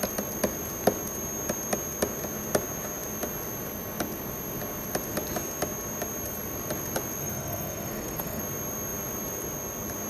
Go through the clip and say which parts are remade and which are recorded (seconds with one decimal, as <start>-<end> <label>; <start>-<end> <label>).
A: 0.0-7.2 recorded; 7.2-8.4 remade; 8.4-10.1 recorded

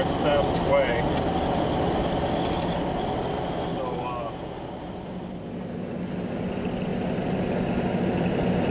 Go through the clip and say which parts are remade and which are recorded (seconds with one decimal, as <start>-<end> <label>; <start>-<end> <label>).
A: 0.0-8.7 recorded

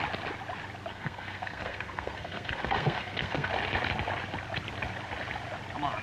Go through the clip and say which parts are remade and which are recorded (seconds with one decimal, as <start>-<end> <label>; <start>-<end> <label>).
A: 0.0-0.9 recorded; 0.9-3.5 remade; 3.5-6.0 recorded